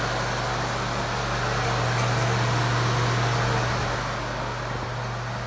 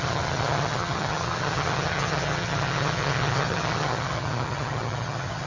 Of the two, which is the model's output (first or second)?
second